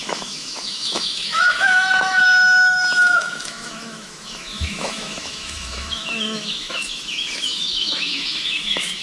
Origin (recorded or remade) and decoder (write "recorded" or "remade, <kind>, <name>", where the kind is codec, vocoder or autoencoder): remade, autoencoder, DAC-VAE